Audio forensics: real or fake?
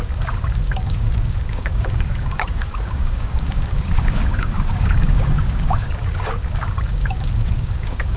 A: fake